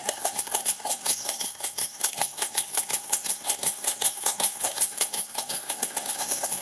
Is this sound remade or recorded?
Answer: remade